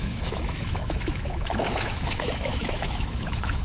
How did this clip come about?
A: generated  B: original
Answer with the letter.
A